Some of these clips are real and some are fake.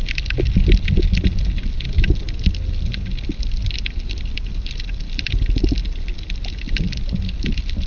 real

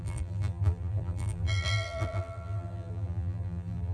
fake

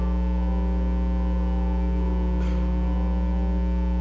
real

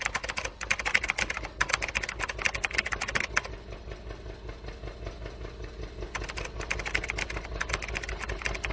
real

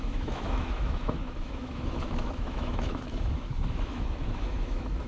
fake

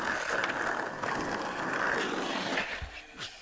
real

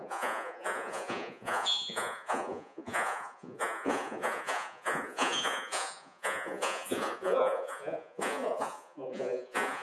fake